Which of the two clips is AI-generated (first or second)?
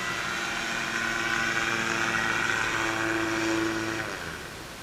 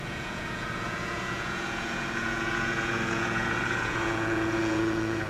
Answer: second